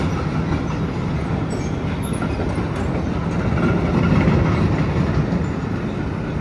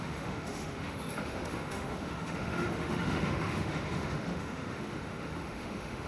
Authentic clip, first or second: first